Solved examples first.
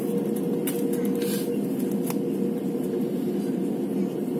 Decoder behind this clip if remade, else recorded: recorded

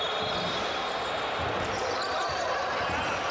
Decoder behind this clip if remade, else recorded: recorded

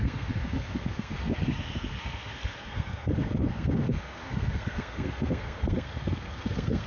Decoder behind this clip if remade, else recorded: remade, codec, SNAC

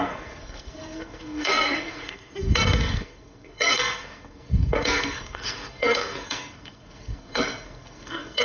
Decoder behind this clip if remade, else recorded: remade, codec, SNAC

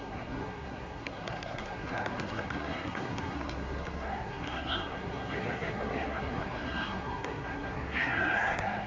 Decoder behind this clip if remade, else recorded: remade, codec, SNAC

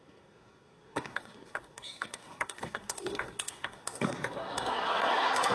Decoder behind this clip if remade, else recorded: remade, codec, SNAC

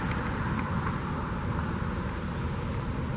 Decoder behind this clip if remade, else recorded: recorded